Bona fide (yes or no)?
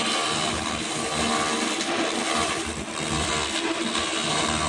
yes